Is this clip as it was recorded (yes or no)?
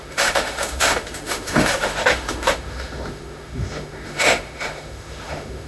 no